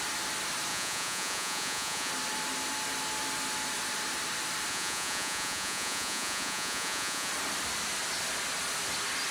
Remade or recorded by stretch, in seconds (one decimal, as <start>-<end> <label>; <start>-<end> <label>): 0.0-0.7 recorded; 0.7-2.1 remade; 2.1-4.7 recorded; 4.7-7.3 remade; 7.3-9.3 recorded